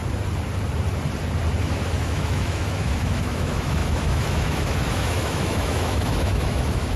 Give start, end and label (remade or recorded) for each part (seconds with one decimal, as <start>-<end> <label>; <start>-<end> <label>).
0.0-1.6 recorded; 1.6-7.0 remade